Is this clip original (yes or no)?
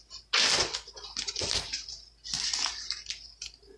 yes